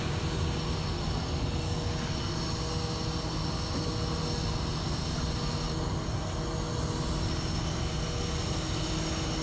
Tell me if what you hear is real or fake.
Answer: real